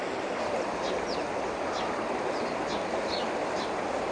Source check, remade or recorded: recorded